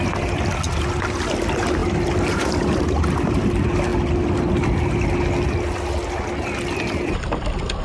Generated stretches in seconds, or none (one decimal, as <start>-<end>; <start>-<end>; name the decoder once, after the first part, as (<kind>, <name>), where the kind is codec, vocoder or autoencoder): none